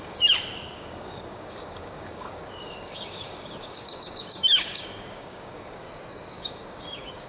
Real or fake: fake